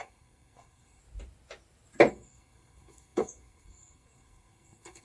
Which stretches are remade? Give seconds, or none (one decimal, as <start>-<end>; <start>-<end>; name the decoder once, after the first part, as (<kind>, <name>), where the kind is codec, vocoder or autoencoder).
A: 0.0-1.0 (codec, SNAC); 2.1-5.0